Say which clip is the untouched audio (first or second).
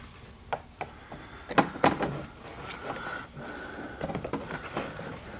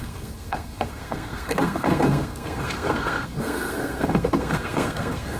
first